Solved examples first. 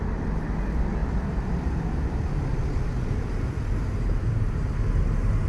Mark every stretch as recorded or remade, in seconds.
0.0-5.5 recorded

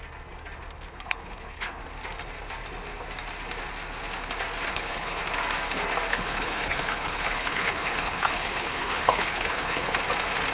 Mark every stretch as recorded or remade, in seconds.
0.0-0.9 recorded; 0.9-1.8 remade; 1.8-4.7 recorded; 4.7-5.2 remade; 5.2-6.1 recorded; 6.1-9.9 remade; 9.9-10.5 recorded

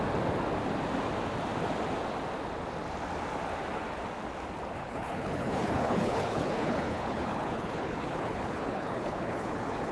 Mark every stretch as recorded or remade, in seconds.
0.0-4.8 recorded; 4.8-9.9 remade